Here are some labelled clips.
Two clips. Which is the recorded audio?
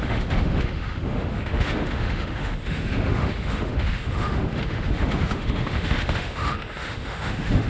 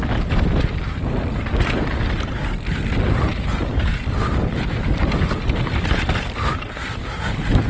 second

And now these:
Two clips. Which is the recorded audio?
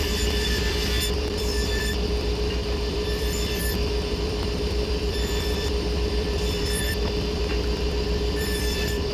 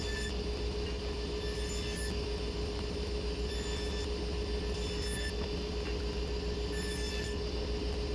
second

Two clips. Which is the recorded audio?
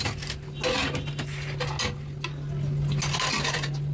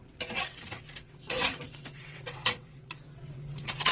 first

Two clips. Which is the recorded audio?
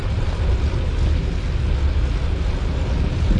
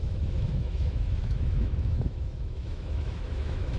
first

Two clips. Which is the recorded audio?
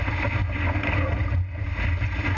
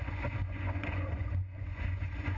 first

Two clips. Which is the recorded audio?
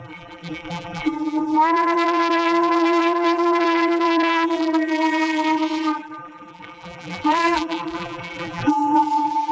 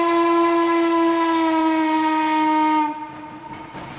second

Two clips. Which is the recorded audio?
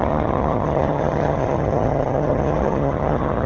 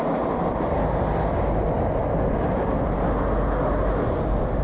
second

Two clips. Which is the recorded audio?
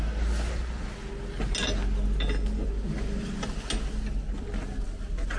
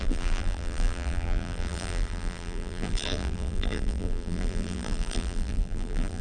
first